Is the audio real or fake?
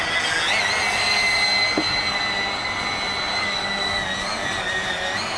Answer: real